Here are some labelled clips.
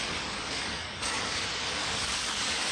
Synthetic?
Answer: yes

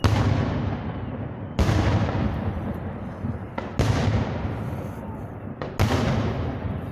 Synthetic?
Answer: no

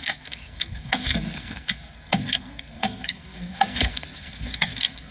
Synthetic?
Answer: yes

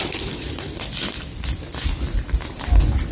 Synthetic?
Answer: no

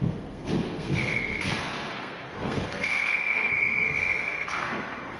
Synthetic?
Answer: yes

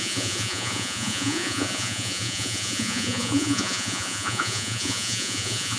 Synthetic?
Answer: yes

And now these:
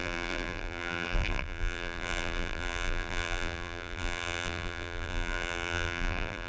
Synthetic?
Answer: yes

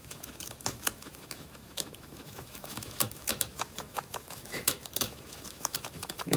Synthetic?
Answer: yes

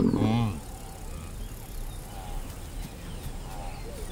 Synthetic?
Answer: no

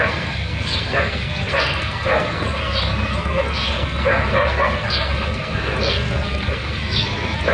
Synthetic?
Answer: yes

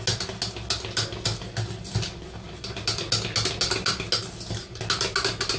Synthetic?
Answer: no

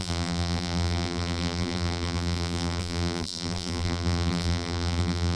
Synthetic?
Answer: yes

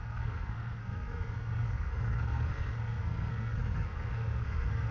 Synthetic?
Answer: yes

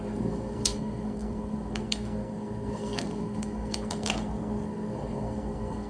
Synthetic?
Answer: yes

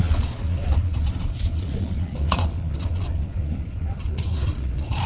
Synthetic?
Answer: yes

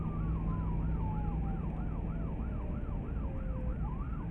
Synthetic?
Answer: no